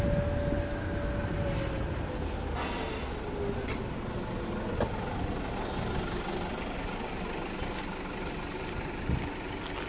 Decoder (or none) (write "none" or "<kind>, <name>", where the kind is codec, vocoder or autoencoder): none